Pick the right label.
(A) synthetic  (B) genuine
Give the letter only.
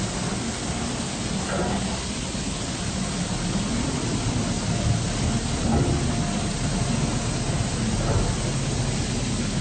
B